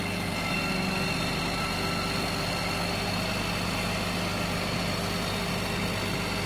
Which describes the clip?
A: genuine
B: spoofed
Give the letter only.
A